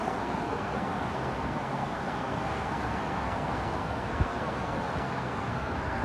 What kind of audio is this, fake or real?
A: fake